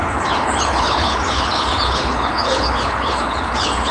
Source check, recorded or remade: remade